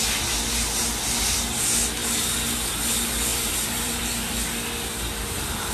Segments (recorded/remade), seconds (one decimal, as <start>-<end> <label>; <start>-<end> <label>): 0.0-3.3 recorded; 3.3-4.0 remade; 4.0-5.7 recorded